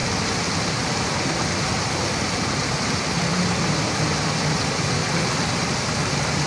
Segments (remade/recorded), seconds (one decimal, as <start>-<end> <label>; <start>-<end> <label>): 0.0-6.5 recorded